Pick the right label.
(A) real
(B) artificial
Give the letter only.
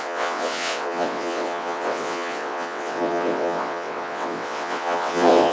B